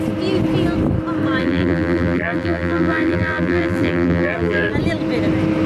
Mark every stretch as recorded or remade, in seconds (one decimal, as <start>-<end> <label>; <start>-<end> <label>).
0.0-1.4 recorded; 1.4-4.7 remade; 4.7-5.7 recorded

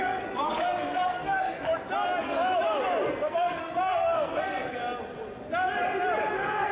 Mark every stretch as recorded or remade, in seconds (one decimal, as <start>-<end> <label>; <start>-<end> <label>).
0.0-1.7 remade; 1.7-3.1 recorded; 3.1-4.8 remade; 4.8-6.3 recorded; 6.3-6.7 remade

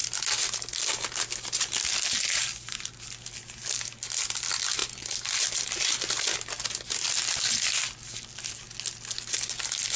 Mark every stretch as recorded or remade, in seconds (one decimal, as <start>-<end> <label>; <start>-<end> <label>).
0.0-10.0 recorded

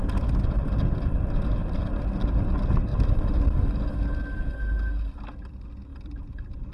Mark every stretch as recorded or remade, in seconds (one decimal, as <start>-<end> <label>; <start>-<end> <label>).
0.0-1.6 recorded; 1.6-2.1 remade; 2.1-5.9 recorded; 5.9-6.7 remade